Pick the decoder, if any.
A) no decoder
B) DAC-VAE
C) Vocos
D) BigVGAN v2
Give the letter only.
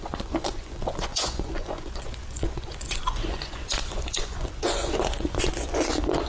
C